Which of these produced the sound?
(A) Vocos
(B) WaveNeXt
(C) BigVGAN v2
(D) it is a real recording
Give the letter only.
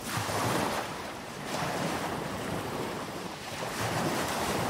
C